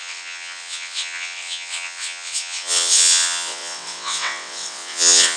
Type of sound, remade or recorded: remade